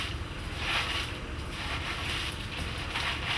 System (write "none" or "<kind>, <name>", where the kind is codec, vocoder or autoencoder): none